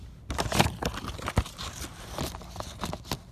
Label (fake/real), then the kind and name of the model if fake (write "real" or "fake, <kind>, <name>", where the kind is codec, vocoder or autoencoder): real